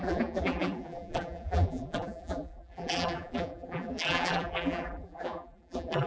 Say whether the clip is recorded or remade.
remade